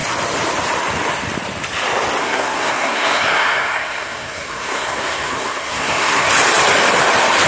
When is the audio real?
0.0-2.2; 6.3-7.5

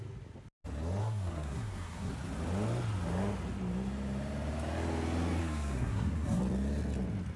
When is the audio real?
0.0-1.0; 2.1-5.4; 6.4-7.4